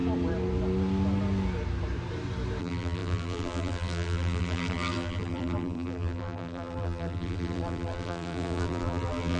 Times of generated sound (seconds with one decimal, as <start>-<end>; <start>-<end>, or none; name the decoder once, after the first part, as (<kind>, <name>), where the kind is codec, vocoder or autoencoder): 2.6-9.4 (vocoder, BigVGAN v2)